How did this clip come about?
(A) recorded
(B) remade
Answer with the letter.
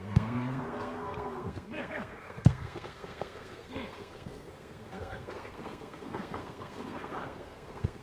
B